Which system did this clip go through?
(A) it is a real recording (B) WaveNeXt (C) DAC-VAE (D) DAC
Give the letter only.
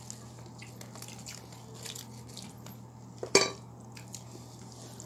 A